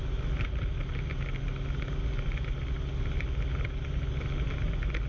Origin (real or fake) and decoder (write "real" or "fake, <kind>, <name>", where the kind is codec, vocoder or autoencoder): real